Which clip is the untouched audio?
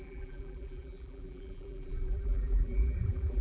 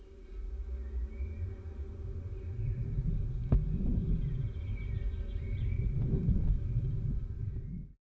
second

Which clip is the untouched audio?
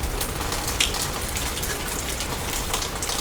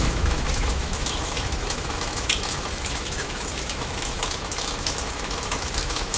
first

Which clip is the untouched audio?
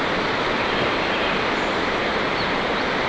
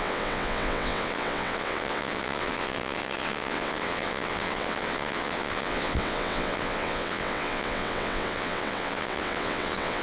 first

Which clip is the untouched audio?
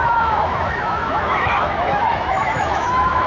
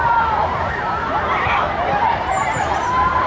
second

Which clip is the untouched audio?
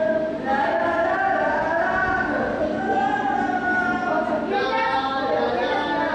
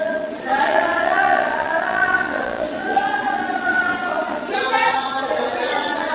first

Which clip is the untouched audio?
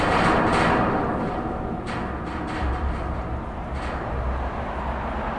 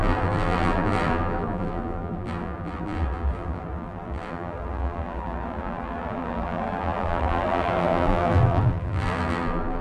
first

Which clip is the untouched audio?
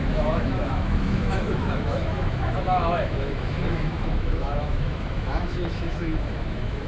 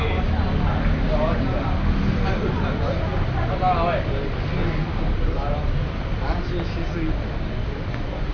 second